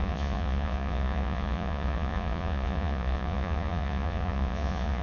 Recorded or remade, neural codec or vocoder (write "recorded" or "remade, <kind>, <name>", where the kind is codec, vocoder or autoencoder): remade, vocoder, Vocos